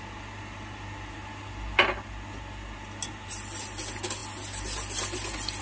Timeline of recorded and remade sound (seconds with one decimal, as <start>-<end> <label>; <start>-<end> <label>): 0.0-5.6 recorded